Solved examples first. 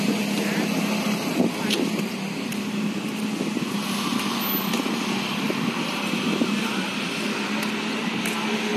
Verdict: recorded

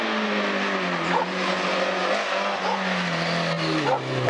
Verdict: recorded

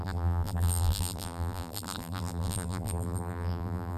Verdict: remade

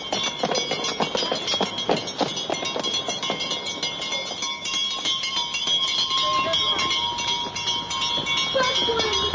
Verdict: recorded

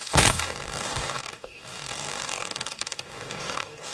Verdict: remade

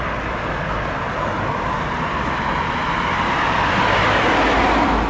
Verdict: recorded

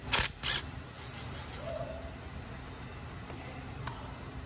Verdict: recorded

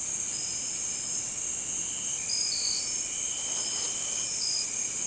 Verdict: recorded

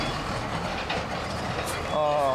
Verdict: recorded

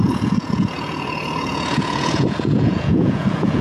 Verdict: remade